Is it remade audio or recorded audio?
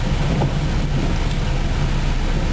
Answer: recorded